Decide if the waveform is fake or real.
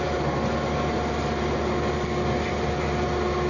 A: real